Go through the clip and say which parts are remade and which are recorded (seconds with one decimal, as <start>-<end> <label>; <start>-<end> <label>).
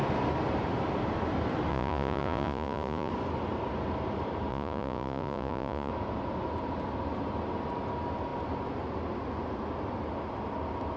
0.0-1.7 recorded; 1.7-3.1 remade; 3.1-4.5 recorded; 4.5-5.9 remade; 5.9-11.0 recorded